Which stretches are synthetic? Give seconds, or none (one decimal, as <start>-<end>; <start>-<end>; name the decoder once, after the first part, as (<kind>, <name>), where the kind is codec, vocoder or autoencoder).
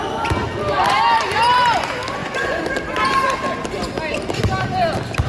2.2-2.7 (vocoder, Vocos)